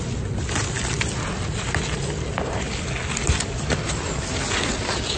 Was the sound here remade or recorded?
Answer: recorded